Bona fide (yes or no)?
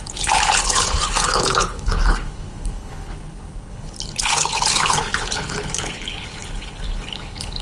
no